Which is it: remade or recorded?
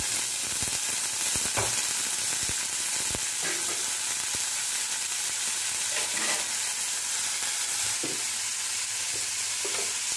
recorded